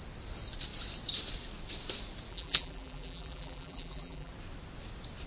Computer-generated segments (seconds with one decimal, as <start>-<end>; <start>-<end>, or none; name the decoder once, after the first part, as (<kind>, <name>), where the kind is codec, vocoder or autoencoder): 2.3-4.3 (vocoder, BigVGAN v2)